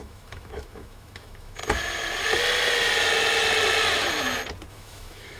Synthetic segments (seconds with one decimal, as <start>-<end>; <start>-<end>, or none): 0.0-1.6; 4.7-5.4